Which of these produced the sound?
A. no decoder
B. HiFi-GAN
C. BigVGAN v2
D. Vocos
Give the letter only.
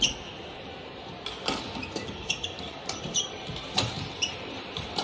C